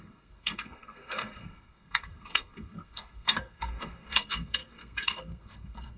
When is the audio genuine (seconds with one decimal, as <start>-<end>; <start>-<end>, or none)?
none